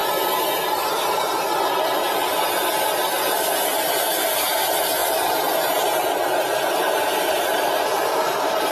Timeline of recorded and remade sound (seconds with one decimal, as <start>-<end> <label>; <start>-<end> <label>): 0.0-4.3 recorded; 4.3-5.0 remade; 5.0-8.0 recorded; 8.0-8.7 remade